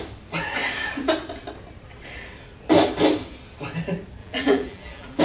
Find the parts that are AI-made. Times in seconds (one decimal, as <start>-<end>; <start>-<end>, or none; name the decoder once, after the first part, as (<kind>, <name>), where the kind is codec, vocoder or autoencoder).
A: 4.2-5.2 (vocoder, BigVGAN v2)

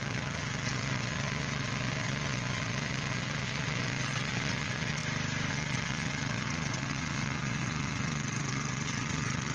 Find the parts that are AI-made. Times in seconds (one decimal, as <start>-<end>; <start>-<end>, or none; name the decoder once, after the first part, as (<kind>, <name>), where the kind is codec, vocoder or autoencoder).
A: 0.0-5.0 (vocoder, WaveNeXt); 5.5-9.5

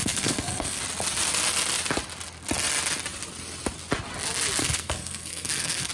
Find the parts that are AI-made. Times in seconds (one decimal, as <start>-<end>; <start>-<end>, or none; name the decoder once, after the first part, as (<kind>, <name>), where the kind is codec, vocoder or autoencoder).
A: 0.0-0.8 (codec, SNAC); 4.6-5.9

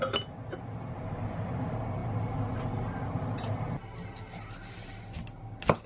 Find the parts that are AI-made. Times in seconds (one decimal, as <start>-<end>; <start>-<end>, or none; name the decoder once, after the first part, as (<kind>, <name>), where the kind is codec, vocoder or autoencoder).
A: none